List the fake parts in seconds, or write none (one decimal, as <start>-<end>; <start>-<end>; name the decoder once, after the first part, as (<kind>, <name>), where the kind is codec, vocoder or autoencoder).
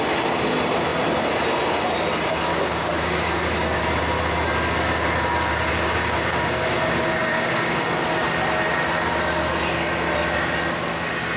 2.3-3.8 (codec, DAC); 5.7-7.8